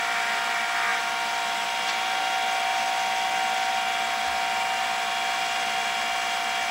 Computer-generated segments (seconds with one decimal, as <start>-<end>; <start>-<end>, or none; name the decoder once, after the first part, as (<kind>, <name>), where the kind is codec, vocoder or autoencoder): none